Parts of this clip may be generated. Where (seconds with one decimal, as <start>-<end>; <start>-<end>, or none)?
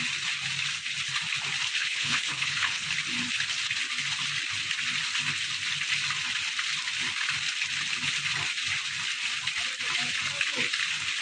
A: 1.8-2.9